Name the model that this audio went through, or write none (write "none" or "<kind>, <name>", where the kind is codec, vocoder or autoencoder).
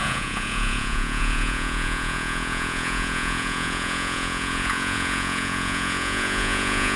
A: vocoder, Vocos